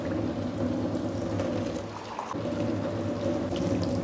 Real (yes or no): yes